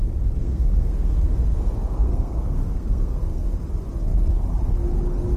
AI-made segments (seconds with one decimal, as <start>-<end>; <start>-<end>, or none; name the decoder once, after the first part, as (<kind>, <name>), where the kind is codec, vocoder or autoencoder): 0.4-3.6 (codec, SNAC)